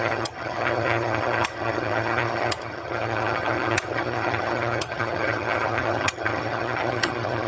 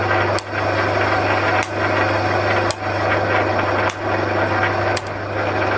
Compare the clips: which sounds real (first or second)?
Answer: second